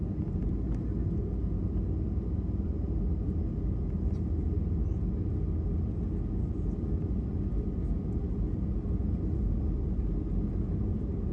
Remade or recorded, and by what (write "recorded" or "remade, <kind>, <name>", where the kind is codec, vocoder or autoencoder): recorded